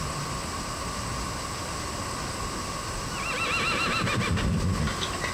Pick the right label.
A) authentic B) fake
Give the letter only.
A